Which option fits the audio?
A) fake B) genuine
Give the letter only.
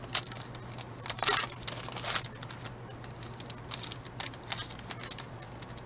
B